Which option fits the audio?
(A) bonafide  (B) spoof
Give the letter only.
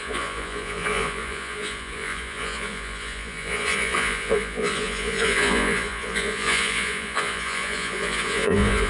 B